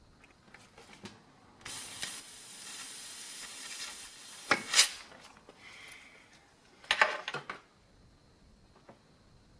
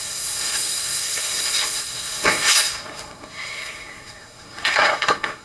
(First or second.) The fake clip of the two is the second